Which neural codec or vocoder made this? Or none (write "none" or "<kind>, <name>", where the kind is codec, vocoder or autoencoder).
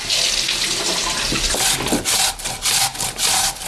none